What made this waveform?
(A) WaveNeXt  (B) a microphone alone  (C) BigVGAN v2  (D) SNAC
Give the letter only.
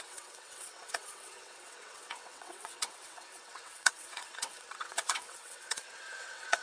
A